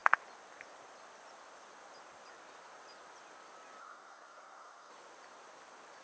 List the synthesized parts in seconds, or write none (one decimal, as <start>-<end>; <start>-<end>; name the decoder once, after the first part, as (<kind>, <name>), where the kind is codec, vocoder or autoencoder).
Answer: 3.8-4.9 (codec, SNAC)